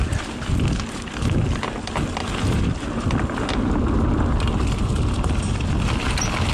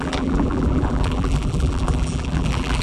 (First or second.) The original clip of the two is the first